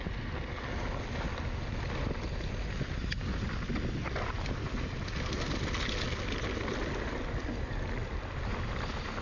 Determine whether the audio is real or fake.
real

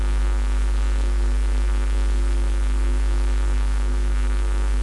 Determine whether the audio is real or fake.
fake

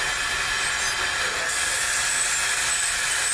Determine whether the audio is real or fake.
real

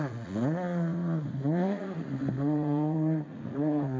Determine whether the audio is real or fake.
fake